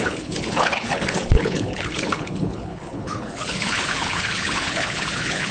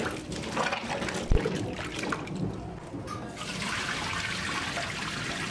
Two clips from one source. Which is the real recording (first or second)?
second